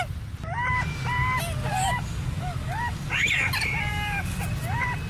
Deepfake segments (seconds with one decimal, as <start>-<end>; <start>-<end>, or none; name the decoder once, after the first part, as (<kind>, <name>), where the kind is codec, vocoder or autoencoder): 1.7-3.1 (codec, DAC); 3.9-4.4